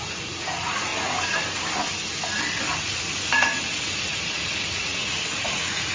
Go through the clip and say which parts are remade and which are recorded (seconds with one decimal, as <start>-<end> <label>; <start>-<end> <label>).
0.0-0.9 remade; 0.9-2.8 recorded; 2.8-5.9 remade

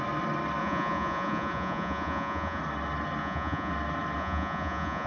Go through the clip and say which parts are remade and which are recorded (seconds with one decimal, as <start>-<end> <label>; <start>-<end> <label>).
0.0-0.6 recorded; 0.6-2.6 remade; 2.6-3.2 recorded; 3.2-3.7 remade; 3.7-4.2 recorded; 4.2-5.1 remade

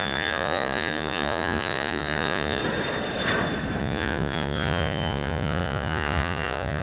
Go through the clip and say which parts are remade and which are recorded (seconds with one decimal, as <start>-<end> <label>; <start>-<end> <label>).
0.0-2.6 remade; 2.6-3.8 recorded; 3.8-6.8 remade

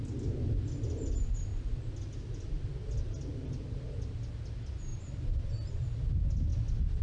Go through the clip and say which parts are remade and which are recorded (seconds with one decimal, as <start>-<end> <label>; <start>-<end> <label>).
0.0-7.0 recorded

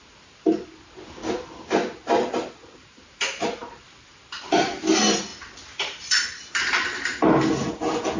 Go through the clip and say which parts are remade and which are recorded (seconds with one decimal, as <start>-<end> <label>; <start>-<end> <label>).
0.0-8.2 recorded

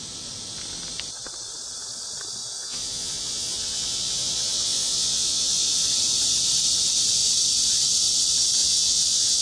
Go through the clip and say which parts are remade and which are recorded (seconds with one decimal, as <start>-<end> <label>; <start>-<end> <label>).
0.0-2.4 recorded; 2.4-5.8 remade; 5.8-8.6 recorded; 8.6-9.4 remade

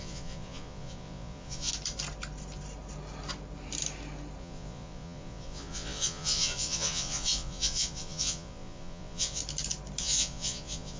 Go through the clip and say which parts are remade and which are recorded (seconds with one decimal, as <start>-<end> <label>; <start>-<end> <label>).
0.0-1.7 remade; 1.7-4.4 recorded; 4.4-9.4 remade; 9.4-10.0 recorded; 10.0-11.0 remade

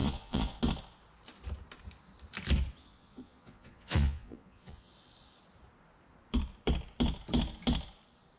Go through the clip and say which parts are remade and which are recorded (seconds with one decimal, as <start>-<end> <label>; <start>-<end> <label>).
0.0-0.6 remade; 0.6-2.8 recorded; 2.8-4.9 remade; 4.9-8.4 recorded